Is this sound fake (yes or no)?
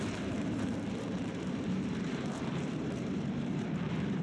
yes